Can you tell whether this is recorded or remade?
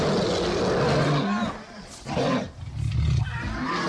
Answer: recorded